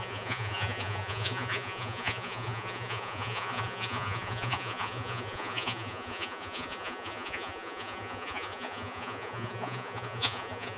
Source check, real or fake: fake